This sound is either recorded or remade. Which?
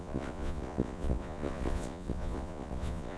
remade